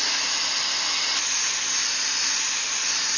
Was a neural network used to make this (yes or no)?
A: no